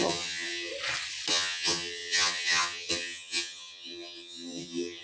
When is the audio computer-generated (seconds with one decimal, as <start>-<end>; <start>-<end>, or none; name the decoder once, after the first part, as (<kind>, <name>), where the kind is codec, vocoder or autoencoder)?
0.0-0.7 (vocoder, HiFi-GAN); 1.3-5.0